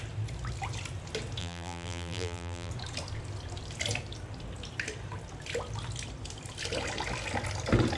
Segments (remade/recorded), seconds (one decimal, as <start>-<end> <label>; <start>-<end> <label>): 0.0-1.4 recorded; 1.4-2.7 remade; 2.7-8.0 recorded